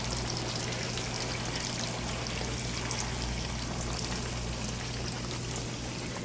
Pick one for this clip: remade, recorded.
recorded